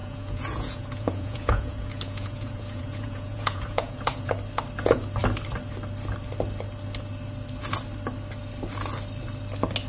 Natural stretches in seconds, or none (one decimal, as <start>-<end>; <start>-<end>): 4.3-9.9

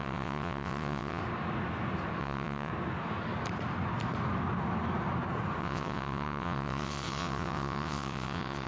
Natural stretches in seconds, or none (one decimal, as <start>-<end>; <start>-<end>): 1.2-2.2; 2.7-5.6

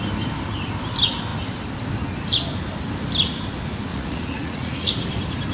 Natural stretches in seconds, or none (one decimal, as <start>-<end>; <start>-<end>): 0.0-3.9; 4.9-5.5

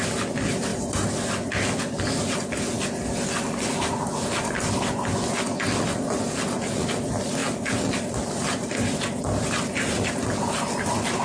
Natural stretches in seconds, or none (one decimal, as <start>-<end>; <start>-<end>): 0.0-11.2

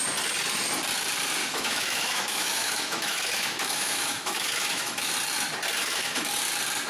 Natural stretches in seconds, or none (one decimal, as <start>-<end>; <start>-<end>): 0.0-1.4; 5.1-5.8; 6.3-6.9